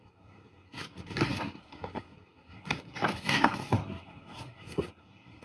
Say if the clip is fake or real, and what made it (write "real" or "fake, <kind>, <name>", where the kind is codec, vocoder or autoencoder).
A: fake, codec, SNAC